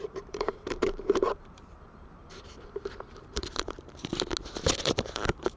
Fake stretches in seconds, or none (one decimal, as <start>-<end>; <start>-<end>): 0.0-4.1; 4.8-5.6